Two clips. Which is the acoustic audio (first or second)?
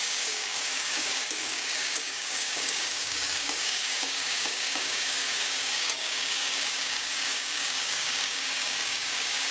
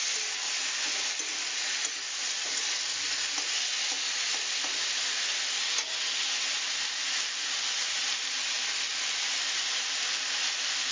second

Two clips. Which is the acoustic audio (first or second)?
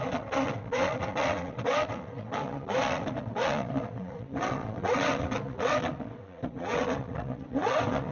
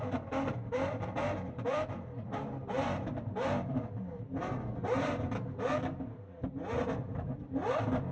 second